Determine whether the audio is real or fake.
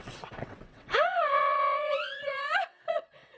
fake